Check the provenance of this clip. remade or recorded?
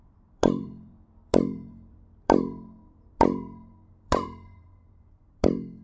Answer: remade